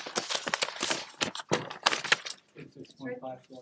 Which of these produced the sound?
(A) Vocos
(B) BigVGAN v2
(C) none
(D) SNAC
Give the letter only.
C